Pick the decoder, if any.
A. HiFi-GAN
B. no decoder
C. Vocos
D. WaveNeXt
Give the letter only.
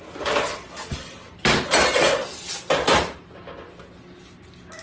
B